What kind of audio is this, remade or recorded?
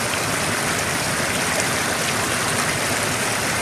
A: recorded